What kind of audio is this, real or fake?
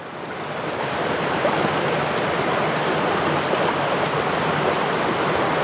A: real